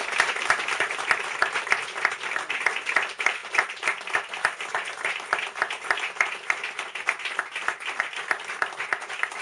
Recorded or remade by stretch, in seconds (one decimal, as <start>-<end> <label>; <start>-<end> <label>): 0.0-9.4 remade